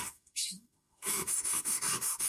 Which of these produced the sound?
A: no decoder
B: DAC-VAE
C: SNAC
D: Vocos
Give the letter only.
B